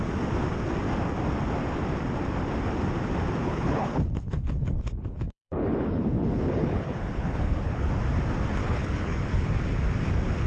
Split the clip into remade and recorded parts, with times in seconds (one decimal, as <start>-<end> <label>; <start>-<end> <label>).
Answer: 0.0-3.4 recorded; 3.4-7.9 remade; 7.9-8.6 recorded; 8.6-9.5 remade; 9.5-10.5 recorded